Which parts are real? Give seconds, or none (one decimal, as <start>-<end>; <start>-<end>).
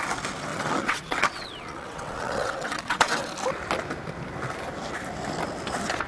0.0-0.5; 3.3-6.1